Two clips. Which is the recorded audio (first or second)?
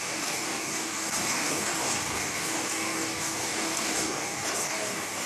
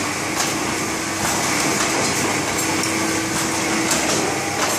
second